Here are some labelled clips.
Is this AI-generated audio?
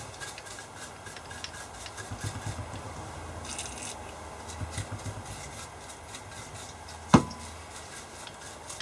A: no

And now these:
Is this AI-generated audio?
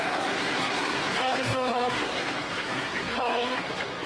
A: yes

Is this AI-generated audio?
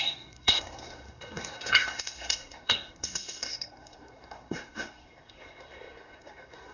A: yes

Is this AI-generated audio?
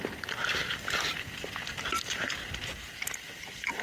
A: no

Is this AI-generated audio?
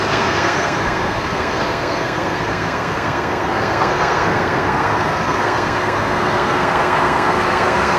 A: yes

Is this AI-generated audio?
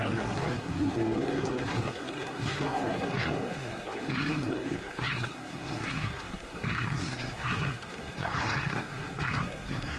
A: yes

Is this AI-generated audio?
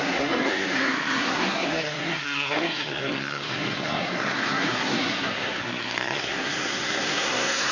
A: yes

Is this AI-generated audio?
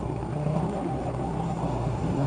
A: yes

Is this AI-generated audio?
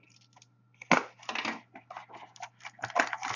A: no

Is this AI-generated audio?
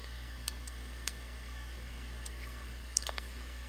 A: yes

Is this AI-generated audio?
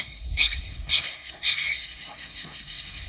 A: yes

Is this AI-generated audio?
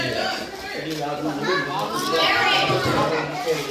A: no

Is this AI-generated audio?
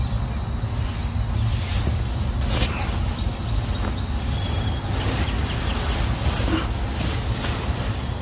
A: no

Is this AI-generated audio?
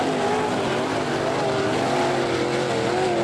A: no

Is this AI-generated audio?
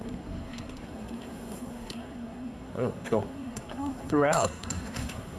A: yes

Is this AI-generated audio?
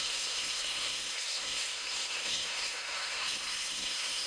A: yes